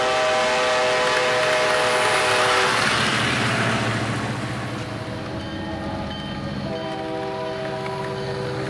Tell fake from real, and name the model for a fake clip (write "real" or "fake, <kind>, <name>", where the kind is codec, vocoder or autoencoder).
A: real